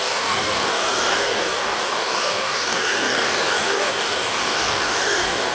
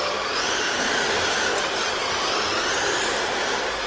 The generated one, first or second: first